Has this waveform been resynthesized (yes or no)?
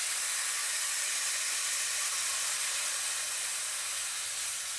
no